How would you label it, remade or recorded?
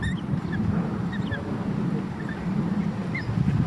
recorded